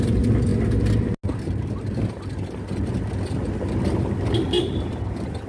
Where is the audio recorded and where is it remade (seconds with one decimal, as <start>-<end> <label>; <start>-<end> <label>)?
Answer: 0.0-5.5 recorded